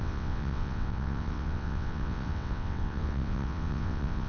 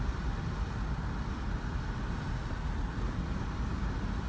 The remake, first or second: first